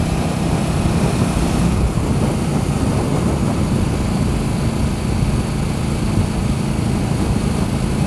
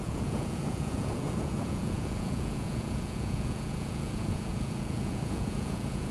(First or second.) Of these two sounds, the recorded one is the first